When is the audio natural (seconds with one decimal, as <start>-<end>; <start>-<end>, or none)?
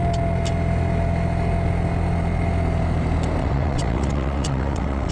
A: 0.0-3.4